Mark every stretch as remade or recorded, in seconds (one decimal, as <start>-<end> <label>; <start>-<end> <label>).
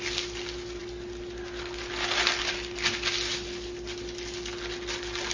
0.0-5.3 recorded